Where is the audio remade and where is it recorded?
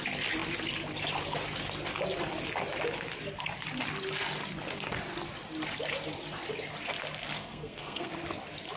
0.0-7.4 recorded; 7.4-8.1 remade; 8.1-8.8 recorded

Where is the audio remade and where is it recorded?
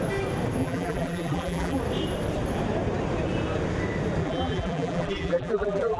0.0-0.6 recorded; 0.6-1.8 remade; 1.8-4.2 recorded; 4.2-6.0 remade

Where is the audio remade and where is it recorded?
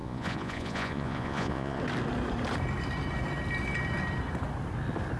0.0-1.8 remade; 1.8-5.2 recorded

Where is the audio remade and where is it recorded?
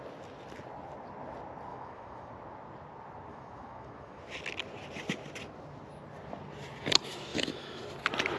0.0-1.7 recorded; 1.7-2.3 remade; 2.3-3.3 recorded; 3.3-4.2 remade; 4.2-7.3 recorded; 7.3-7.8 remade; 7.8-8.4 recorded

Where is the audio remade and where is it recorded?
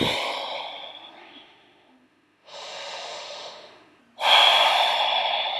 0.0-1.2 recorded; 1.2-4.0 remade; 4.0-5.6 recorded